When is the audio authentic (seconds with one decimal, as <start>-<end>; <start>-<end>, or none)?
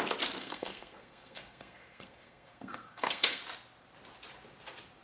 0.0-0.4; 3.4-5.0